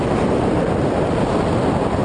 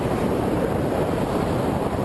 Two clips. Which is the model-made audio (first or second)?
second